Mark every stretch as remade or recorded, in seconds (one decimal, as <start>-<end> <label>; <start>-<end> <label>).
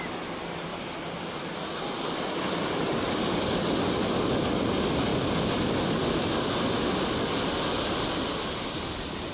0.0-9.3 recorded